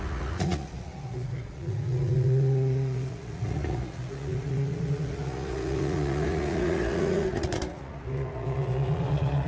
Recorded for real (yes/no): no